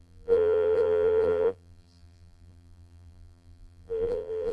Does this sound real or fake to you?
fake